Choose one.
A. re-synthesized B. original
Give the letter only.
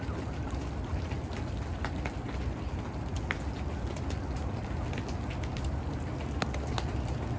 B